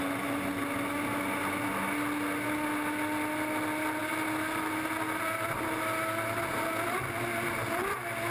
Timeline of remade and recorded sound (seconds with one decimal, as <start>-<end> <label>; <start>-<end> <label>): 0.0-8.3 recorded